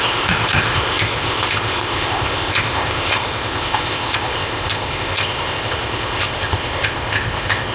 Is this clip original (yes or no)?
no